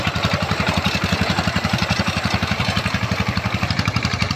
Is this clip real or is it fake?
fake